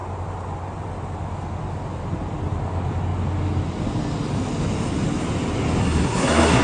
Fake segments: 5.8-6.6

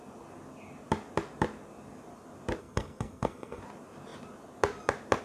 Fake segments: 2.6-3.6

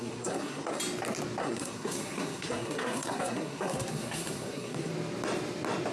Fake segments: 0.0-0.8; 1.4-4.9

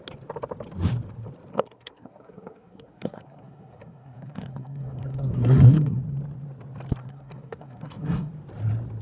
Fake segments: 1.5-6.0; 7.0-8.3

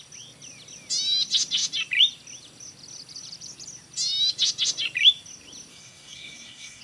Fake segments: 5.7-6.8

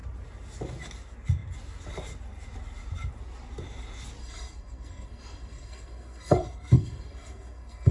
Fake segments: 4.2-7.9